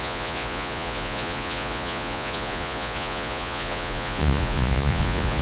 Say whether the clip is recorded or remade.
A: remade